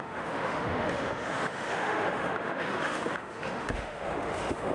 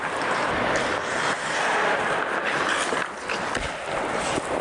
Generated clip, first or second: first